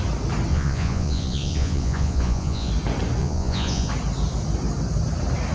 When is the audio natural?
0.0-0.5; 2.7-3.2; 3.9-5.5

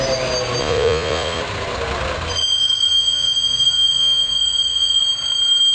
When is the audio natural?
0.0-0.6; 1.4-2.9; 5.0-5.7

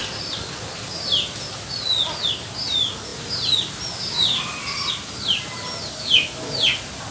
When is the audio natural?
0.0-7.1